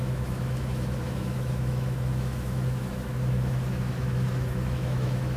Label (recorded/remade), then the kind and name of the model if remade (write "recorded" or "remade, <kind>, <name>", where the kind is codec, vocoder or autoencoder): remade, autoencoder, DAC-VAE